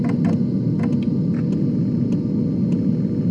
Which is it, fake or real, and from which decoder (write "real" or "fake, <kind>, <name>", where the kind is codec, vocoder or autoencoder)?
real